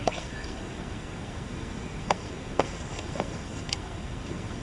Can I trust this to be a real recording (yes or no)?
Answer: no